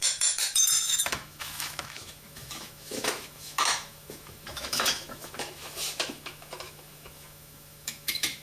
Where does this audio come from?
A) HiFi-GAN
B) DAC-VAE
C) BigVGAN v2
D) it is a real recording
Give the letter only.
B